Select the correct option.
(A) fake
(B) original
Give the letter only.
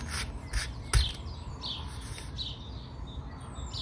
B